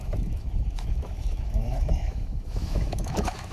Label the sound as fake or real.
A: fake